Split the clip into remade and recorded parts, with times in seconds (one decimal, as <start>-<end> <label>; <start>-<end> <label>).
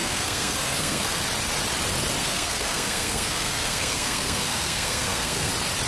0.0-1.2 remade; 1.2-2.2 recorded; 2.2-5.5 remade; 5.5-5.9 recorded